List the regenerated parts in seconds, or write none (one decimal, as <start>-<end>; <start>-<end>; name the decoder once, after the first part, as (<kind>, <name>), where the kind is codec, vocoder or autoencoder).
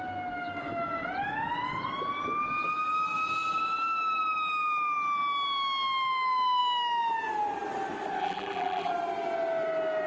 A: 8.2-8.9 (vocoder, BigVGAN v2)